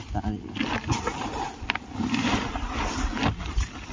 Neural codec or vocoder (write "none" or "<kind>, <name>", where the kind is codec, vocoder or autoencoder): none